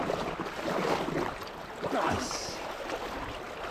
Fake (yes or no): no